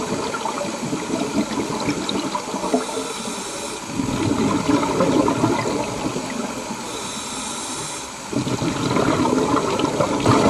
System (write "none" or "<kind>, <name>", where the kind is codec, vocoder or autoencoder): none